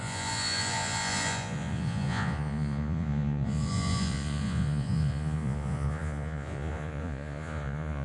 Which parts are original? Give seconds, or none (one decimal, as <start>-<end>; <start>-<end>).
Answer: none

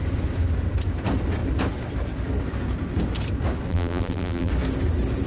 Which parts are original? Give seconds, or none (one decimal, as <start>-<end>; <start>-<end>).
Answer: 0.0-3.7; 4.5-5.3